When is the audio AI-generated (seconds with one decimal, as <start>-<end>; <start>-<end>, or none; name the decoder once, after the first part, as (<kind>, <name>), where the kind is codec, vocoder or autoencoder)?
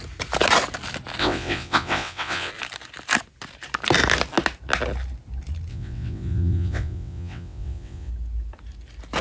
1.2-2.5 (vocoder, WaveNeXt); 5.7-8.1